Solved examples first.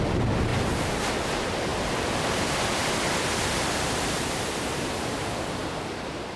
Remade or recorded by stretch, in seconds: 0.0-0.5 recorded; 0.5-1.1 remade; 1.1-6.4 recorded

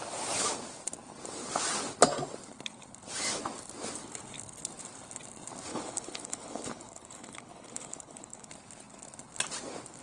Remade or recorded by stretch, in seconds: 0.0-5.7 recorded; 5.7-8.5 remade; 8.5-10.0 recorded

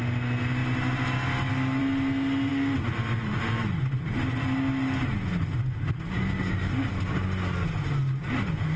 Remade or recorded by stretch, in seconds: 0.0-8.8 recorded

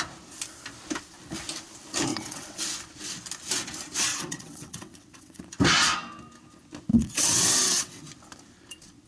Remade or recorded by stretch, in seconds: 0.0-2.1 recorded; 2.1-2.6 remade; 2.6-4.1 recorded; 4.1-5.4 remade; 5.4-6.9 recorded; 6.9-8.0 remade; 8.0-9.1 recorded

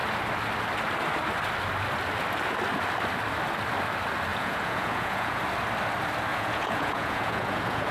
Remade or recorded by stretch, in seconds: 0.0-4.3 recorded; 4.3-5.4 remade; 5.4-6.3 recorded; 6.3-7.9 remade

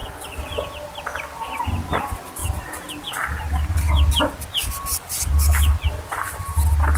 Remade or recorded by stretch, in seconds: 0.0-7.0 recorded